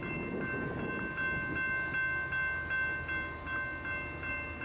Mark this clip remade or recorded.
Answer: recorded